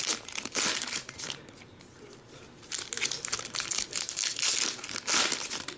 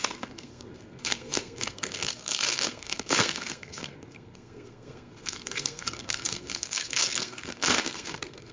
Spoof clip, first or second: second